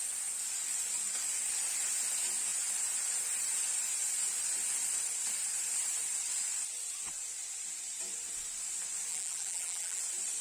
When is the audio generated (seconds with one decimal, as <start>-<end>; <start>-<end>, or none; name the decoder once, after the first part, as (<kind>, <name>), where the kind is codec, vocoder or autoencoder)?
9.1-10.0 (vocoder, BigVGAN v2)

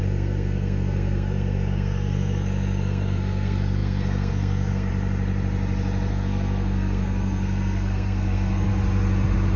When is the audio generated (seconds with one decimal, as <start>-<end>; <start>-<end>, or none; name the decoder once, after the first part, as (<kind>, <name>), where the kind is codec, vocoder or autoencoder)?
0.0-4.9 (codec, SNAC); 6.1-8.7

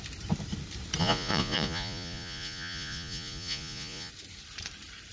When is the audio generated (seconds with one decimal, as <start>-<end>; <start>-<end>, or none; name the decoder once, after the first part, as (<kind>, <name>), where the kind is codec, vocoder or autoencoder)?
1.0-4.1 (vocoder, Vocos)

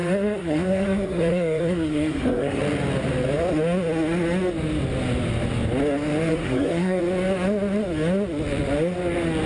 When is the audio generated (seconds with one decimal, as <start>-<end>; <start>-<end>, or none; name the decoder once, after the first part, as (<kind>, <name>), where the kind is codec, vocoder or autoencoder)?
0.0-2.6 (codec, SNAC); 6.3-7.0

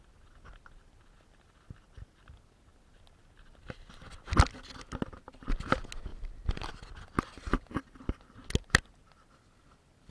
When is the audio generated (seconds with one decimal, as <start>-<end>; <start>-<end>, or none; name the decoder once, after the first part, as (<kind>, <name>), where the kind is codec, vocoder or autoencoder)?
none

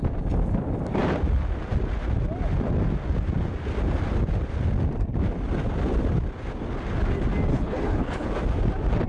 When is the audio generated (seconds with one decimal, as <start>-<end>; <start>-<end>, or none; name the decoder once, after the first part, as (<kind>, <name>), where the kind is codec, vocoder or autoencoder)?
7.5-8.3 (codec, HILCodec)

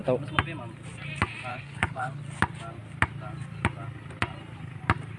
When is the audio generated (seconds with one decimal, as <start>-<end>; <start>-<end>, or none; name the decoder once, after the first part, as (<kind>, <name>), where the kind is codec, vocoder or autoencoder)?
1.5-2.2 (codec, HILCodec)